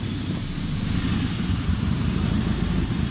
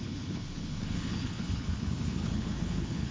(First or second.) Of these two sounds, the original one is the first